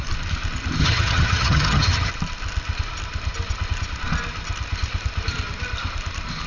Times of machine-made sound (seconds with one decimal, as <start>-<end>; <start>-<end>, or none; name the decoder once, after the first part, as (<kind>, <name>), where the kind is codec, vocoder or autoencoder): 0.8-2.1 (vocoder, HiFi-GAN)